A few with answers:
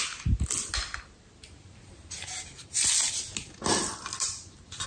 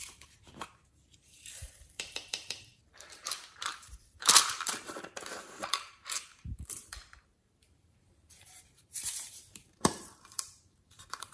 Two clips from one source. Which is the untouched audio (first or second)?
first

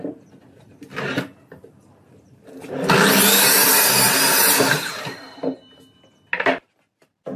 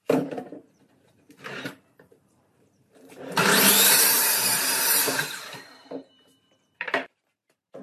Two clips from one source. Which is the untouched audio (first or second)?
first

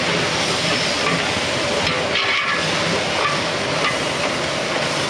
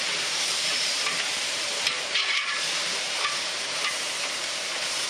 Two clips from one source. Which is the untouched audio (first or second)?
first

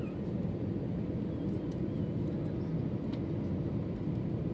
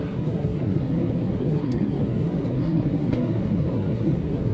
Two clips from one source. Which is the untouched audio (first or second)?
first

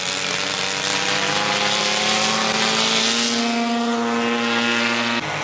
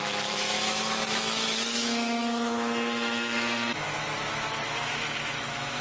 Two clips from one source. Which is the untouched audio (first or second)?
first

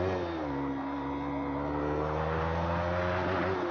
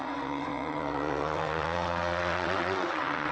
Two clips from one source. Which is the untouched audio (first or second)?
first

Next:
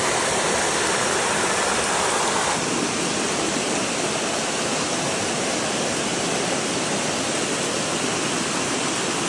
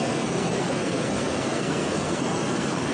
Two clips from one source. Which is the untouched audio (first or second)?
first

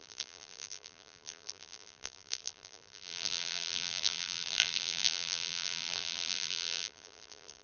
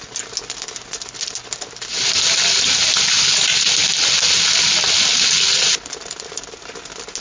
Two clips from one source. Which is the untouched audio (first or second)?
second